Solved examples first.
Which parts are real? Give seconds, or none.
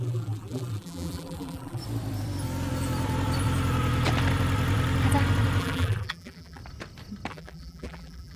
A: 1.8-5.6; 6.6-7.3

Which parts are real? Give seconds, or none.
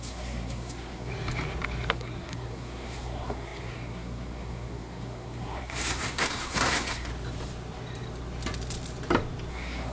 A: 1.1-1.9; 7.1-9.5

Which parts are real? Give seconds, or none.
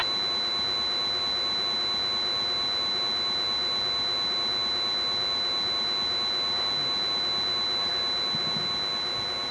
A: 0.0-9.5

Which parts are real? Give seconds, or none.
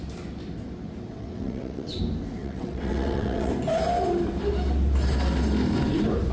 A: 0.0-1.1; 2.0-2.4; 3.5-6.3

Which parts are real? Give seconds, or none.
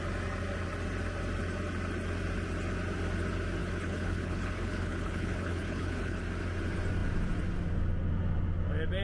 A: 0.0-3.6; 6.2-9.0